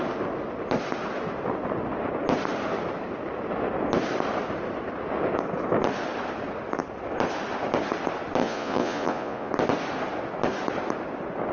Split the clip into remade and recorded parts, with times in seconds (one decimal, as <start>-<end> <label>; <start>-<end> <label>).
0.0-8.4 recorded; 8.4-9.5 remade; 9.5-11.5 recorded

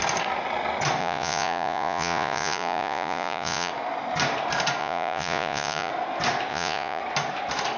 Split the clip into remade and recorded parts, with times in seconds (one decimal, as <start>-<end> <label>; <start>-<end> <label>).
0.0-1.0 recorded; 1.0-3.7 remade; 3.7-4.8 recorded; 4.8-5.9 remade; 5.9-6.5 recorded; 6.5-7.0 remade; 7.0-7.8 recorded

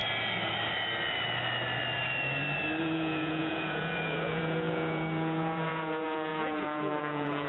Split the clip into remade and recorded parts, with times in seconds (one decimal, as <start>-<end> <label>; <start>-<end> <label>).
0.0-2.8 recorded; 2.8-7.5 remade

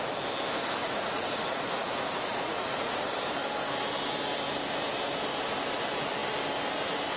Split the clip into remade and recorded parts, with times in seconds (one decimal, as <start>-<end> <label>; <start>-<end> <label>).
0.0-0.8 recorded; 0.8-3.1 remade; 3.1-7.2 recorded

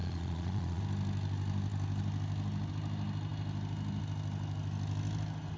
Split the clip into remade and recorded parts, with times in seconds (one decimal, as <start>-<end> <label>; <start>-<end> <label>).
0.0-0.8 remade; 0.8-5.6 recorded

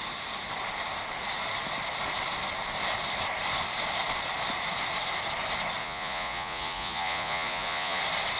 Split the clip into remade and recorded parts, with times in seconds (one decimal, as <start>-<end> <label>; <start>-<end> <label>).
0.0-5.8 recorded; 5.8-8.0 remade; 8.0-8.4 recorded